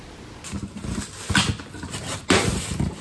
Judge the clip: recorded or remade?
recorded